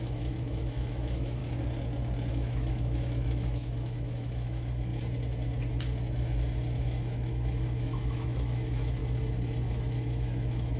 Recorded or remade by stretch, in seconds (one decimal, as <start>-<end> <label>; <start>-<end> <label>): 0.0-1.4 remade; 1.4-2.3 recorded; 2.3-4.9 remade; 4.9-6.8 recorded; 6.8-9.0 remade; 9.0-9.7 recorded; 9.7-10.8 remade